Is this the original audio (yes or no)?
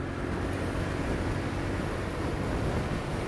yes